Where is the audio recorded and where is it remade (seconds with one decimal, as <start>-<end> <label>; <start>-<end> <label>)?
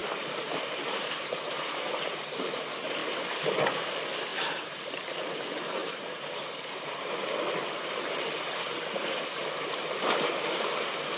0.0-2.6 remade; 2.6-4.3 recorded; 4.3-4.9 remade; 4.9-5.8 recorded; 5.8-7.2 remade; 7.2-11.2 recorded